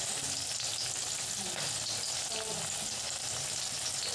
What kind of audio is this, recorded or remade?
recorded